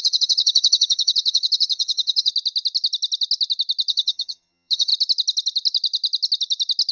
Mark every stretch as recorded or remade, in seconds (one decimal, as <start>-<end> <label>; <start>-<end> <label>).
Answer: 0.0-2.3 remade; 2.3-3.9 recorded; 3.9-4.9 remade; 4.9-6.9 recorded